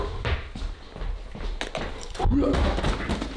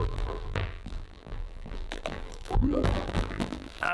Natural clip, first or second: first